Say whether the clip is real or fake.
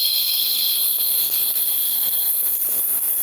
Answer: fake